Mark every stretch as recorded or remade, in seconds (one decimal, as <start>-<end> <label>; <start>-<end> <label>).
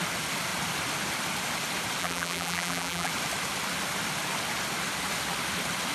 0.0-2.0 recorded; 2.0-3.1 remade; 3.1-5.9 recorded